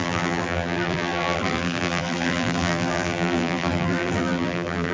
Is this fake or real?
fake